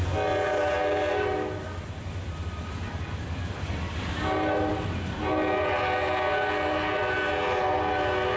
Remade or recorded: recorded